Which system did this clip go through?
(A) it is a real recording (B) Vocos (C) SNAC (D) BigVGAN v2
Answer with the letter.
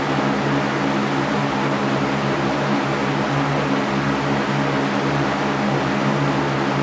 A